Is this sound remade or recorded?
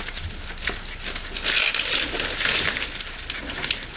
recorded